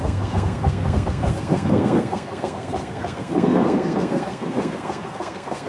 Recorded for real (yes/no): no